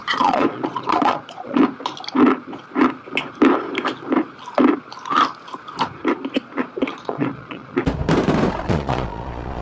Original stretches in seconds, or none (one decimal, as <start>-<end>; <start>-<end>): 1.6-6.4; 7.8-8.6